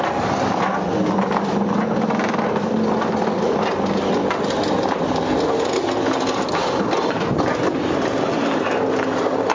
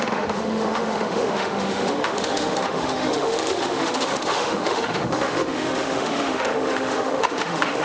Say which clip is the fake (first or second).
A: second